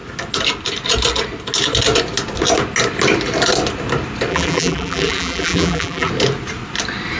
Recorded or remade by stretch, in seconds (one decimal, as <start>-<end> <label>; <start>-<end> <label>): 0.0-4.3 recorded; 4.3-6.1 remade; 6.1-7.2 recorded